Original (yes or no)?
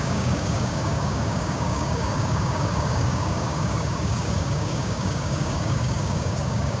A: no